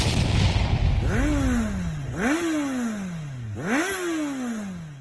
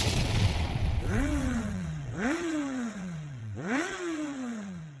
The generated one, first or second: second